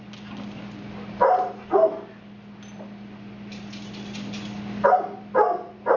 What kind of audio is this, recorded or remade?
recorded